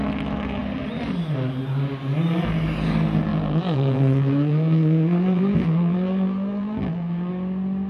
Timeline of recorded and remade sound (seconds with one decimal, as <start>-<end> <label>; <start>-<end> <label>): 0.0-3.3 recorded; 3.3-7.3 remade; 7.3-7.9 recorded